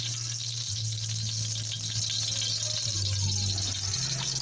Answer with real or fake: real